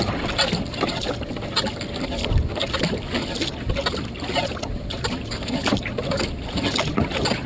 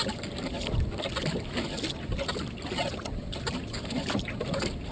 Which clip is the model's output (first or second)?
second